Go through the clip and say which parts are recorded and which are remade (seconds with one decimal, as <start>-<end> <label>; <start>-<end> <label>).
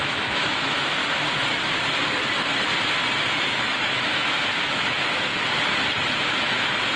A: 0.0-1.0 remade; 1.0-3.3 recorded; 3.3-5.3 remade; 5.3-7.0 recorded